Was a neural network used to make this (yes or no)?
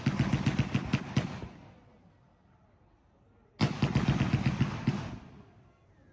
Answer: no